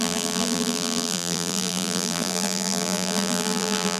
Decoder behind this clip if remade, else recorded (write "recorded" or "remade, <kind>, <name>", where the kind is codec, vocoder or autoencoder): remade, vocoder, BigVGAN v2